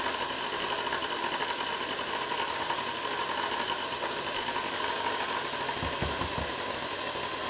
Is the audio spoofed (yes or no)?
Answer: no